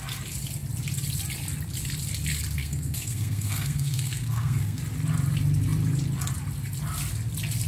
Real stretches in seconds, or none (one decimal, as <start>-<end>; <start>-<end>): 0.0-2.6; 4.8-7.7